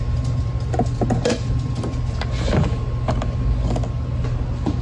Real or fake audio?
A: real